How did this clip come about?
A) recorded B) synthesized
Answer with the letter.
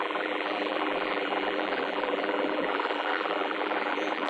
B